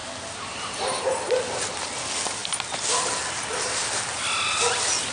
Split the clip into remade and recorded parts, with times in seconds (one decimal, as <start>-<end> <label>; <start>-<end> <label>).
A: 0.0-5.1 recorded